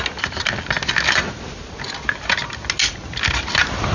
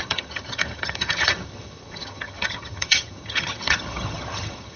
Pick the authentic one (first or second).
first